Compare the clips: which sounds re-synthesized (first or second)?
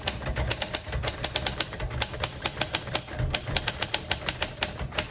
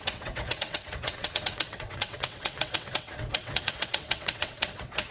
second